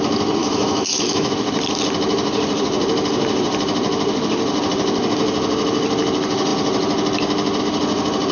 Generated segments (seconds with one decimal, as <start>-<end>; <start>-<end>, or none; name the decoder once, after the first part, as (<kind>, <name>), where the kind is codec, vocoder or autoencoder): 0.4-1.3 (autoencoder, DAC-VAE)